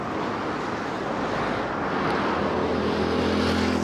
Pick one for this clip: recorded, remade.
recorded